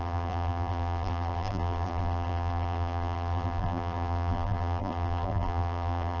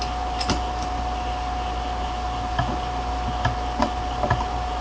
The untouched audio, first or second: second